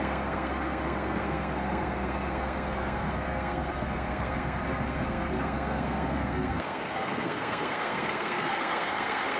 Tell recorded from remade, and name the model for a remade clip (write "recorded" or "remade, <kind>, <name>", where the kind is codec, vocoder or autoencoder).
remade, codec, SNAC